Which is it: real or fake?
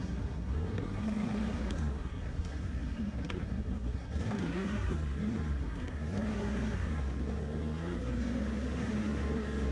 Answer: fake